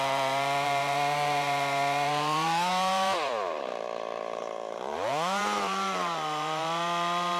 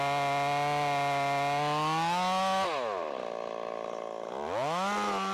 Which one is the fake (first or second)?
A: first